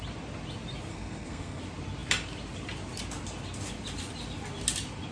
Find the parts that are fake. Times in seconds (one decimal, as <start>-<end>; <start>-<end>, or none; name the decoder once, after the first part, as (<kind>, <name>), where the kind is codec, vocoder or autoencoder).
0.9-1.6 (codec, SNAC)